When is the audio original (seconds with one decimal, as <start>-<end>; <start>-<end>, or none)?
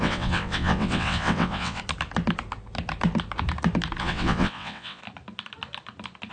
1.8-4.0; 5.0-6.3